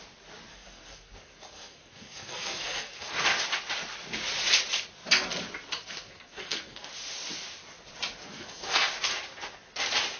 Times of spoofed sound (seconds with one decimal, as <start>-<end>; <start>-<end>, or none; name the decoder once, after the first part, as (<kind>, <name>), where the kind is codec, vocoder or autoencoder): 0.5-3.1 (codec, SNAC); 5.8-6.9; 8.2-8.9